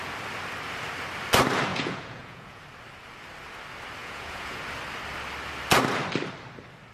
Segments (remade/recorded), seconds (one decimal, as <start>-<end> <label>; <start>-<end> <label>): 0.0-1.7 recorded; 1.7-2.6 remade; 2.6-4.0 recorded; 4.0-4.6 remade; 4.6-6.9 recorded